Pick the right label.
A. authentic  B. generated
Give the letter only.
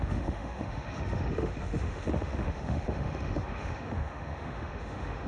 B